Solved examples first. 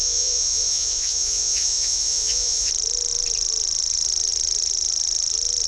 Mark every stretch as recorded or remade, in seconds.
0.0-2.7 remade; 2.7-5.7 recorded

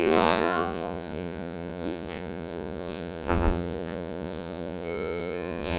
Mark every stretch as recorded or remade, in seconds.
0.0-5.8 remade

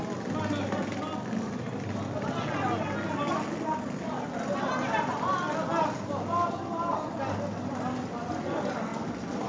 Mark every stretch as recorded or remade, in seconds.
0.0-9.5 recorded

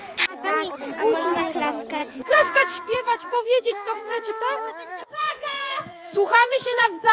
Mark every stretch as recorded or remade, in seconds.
0.0-2.0 recorded; 2.0-4.3 remade; 4.3-4.9 recorded; 4.9-7.1 remade

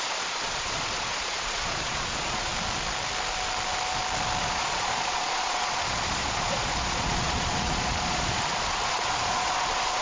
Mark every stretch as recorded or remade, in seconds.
0.0-2.5 remade; 2.5-4.4 recorded; 4.4-10.0 remade

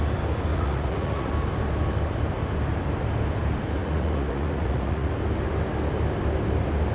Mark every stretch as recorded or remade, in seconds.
0.0-0.5 recorded; 0.5-1.3 remade; 1.3-3.8 recorded; 3.8-5.1 remade; 5.1-6.9 recorded

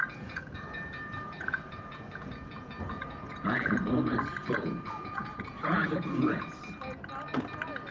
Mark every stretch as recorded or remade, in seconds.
0.0-3.7 remade; 3.7-4.4 recorded; 4.4-6.6 remade; 6.6-7.9 recorded